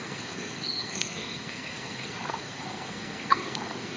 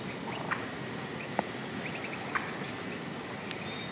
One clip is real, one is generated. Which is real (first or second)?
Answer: second